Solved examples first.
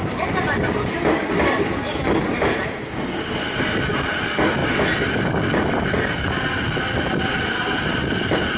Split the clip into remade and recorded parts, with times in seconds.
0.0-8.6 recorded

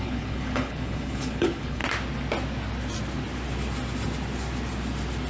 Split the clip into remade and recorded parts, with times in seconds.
0.0-1.8 remade; 1.8-5.3 recorded

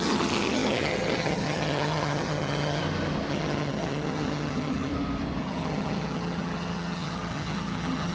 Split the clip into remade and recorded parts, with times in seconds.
0.0-2.8 remade; 2.8-3.3 recorded; 3.3-4.9 remade; 4.9-5.4 recorded; 5.4-8.1 remade

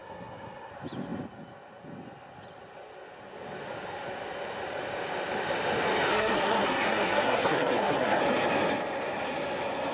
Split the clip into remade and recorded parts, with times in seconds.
0.0-0.7 remade; 0.7-6.1 recorded; 6.1-8.2 remade; 8.2-9.9 recorded

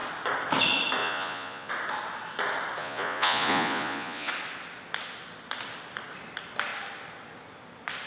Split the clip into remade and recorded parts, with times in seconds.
0.0-1.0 recorded; 1.0-1.7 remade; 1.7-2.8 recorded; 2.8-4.3 remade; 4.3-8.1 recorded

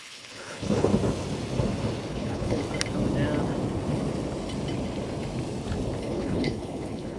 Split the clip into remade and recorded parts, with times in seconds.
0.0-0.9 remade; 0.9-2.1 recorded; 2.1-2.6 remade; 2.6-6.0 recorded; 6.0-7.2 remade